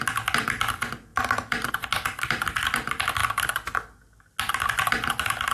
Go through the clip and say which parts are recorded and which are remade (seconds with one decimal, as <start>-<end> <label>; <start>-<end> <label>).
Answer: 0.0-5.5 recorded